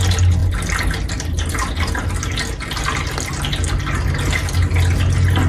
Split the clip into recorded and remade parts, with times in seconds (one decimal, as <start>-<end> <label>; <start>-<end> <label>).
0.0-5.5 recorded

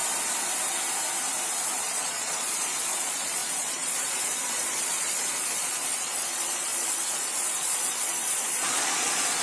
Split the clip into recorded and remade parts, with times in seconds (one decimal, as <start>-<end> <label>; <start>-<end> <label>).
0.0-1.9 recorded; 1.9-9.4 remade